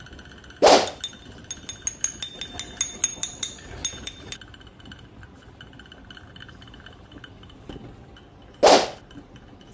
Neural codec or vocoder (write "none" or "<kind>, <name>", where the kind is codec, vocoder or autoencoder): none